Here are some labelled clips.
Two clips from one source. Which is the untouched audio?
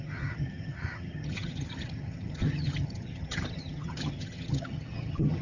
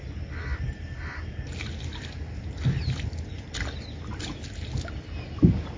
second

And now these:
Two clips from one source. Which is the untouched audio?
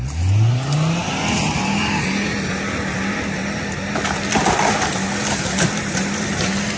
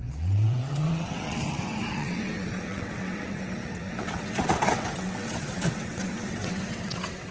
first